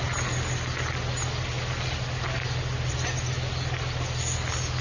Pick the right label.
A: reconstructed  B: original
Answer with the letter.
B